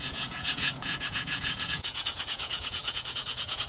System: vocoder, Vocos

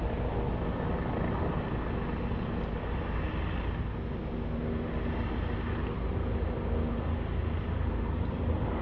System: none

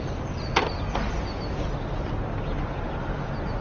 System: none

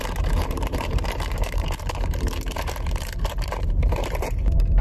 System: vocoder, BigVGAN v2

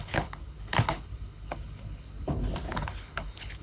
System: codec, HILCodec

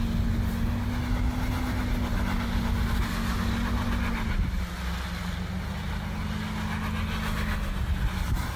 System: none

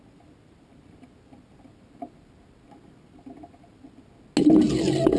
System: none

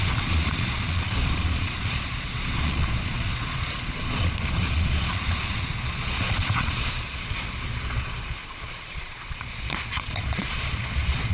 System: vocoder, Vocos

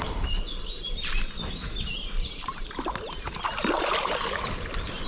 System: none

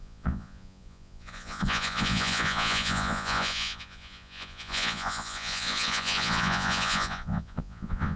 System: vocoder, Vocos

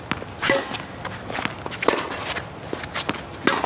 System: none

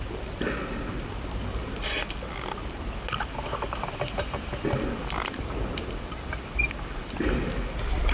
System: none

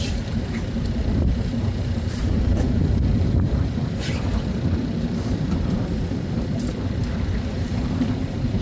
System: vocoder, BigVGAN v2